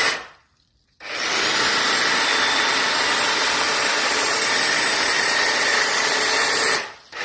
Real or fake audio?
fake